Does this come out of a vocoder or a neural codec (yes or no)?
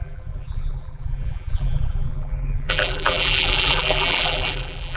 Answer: yes